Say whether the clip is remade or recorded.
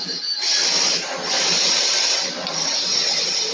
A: remade